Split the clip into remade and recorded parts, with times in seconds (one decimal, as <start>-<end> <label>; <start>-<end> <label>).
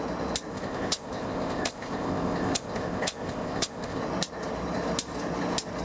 0.0-0.5 recorded; 0.5-4.0 remade; 4.0-5.8 recorded